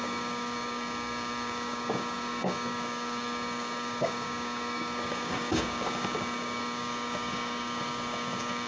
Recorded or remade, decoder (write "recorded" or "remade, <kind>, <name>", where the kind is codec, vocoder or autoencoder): remade, codec, DAC